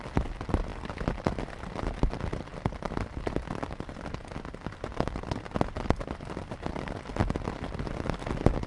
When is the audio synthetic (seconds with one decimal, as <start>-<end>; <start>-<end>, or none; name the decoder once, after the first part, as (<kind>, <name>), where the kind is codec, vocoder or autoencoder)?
none

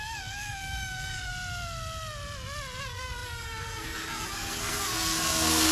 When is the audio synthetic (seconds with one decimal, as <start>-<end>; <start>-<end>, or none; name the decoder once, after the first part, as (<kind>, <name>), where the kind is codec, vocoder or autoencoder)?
0.0-1.3 (codec, SNAC); 2.8-5.7

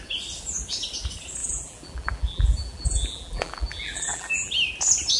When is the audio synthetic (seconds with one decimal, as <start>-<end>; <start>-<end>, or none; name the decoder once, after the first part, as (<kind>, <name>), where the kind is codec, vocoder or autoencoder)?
1.4-4.5 (vocoder, BigVGAN v2)